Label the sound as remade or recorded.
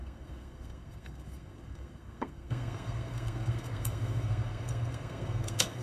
remade